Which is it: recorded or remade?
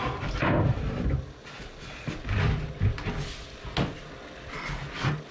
recorded